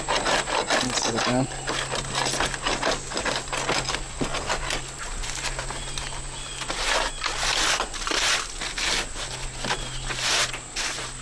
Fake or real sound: real